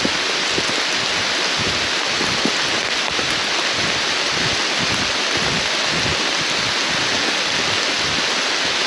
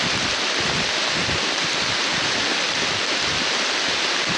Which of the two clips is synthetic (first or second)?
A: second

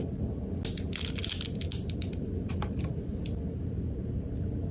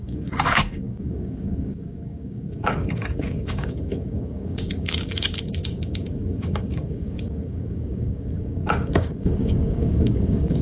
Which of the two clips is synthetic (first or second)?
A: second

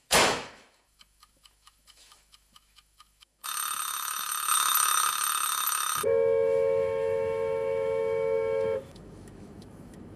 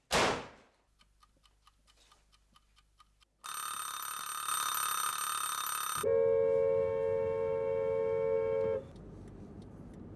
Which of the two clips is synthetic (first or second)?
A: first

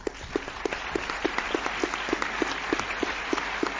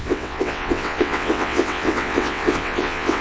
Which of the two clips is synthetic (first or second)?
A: second